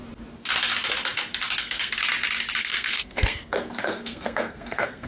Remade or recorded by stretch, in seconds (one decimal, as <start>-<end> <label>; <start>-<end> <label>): 0.0-1.6 recorded; 1.6-2.0 remade; 2.0-2.6 recorded; 2.6-5.1 remade